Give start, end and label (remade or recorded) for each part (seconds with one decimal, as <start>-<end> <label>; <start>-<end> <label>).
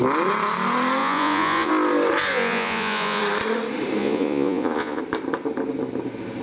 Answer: 0.0-1.0 recorded; 1.0-1.7 remade; 1.7-2.3 recorded; 2.3-3.2 remade; 3.2-4.0 recorded; 4.0-5.0 remade; 5.0-6.4 recorded